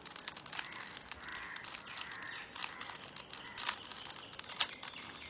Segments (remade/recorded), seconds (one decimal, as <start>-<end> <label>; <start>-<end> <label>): 0.0-5.3 recorded

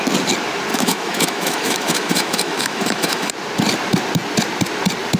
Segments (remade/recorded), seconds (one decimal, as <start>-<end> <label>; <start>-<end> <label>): 0.0-0.7 recorded; 0.7-3.3 remade; 3.3-5.2 recorded

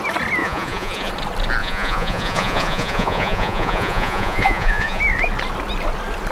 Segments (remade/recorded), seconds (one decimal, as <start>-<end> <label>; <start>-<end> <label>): 0.0-0.4 recorded; 0.4-1.1 remade; 1.1-1.6 recorded; 1.6-5.0 remade; 5.0-6.3 recorded